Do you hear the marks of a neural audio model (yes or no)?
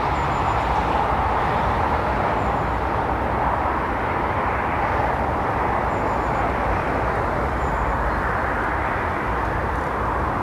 no